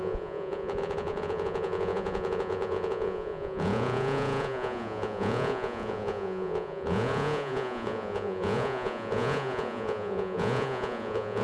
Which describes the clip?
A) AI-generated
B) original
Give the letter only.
A